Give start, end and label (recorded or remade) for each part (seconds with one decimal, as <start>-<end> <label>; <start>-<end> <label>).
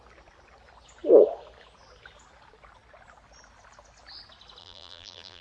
0.0-4.6 recorded; 4.6-5.4 remade